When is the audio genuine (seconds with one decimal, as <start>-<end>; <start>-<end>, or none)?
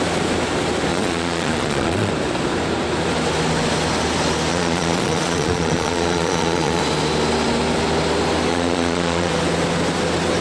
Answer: 0.0-0.9; 2.1-4.5; 6.8-8.5; 9.3-10.4